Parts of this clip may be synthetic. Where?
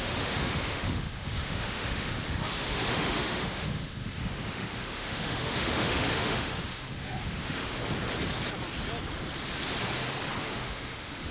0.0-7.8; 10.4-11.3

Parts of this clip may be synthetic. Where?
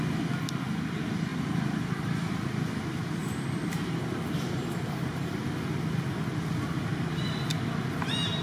1.3-2.3; 3.2-5.3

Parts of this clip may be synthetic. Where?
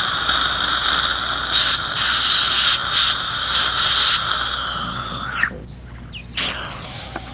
none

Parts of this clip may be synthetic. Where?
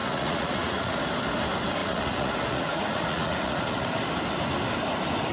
0.0-1.1; 1.8-4.0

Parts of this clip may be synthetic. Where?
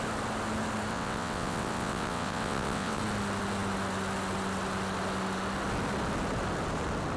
0.9-3.0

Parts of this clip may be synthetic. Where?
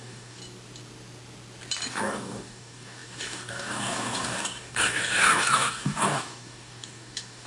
0.0-0.4; 1.9-7.5